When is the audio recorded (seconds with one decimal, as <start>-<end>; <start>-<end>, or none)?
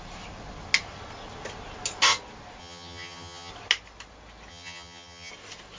0.0-2.6; 3.5-4.5; 5.3-5.8